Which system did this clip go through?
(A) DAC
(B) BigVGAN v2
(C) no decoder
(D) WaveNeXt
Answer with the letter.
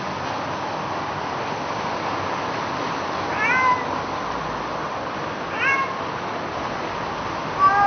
C